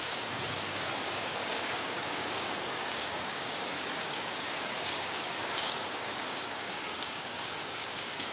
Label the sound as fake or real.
fake